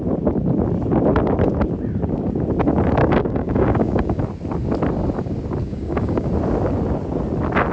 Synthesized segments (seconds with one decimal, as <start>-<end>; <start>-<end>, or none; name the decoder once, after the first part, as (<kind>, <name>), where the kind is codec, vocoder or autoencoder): 3.0-4.2 (codec, DAC); 5.6-6.3